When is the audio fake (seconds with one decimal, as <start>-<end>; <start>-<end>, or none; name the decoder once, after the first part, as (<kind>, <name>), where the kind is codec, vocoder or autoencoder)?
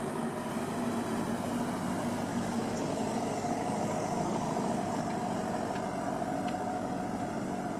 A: 2.3-4.9 (codec, DAC)